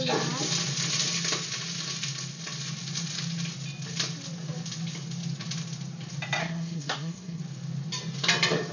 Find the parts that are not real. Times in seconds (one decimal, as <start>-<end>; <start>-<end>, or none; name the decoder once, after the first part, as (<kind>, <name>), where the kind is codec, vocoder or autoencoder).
6.4-7.4 (codec, SNAC)